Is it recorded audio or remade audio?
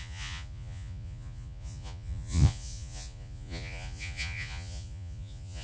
remade